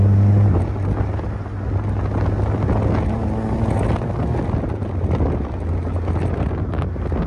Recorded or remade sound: recorded